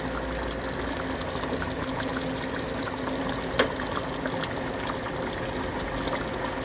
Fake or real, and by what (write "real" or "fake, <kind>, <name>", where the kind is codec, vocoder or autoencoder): real